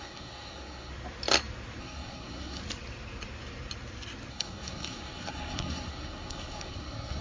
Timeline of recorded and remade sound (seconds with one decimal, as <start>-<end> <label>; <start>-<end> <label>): 0.0-0.9 remade; 0.9-1.8 recorded; 1.8-2.6 remade; 2.6-4.3 recorded; 4.3-7.2 remade